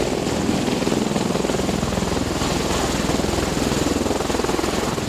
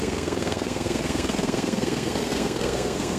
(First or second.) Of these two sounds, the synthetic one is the second